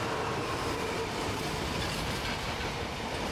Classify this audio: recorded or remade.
recorded